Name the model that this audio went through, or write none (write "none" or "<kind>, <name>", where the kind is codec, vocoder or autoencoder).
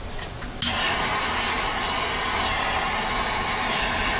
none